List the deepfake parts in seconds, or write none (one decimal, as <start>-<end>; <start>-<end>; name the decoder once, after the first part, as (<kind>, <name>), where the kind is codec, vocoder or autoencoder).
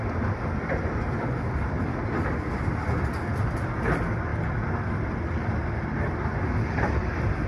none